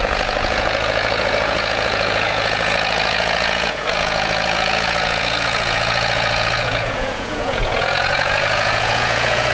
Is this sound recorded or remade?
remade